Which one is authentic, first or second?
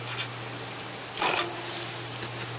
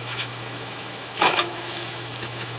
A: first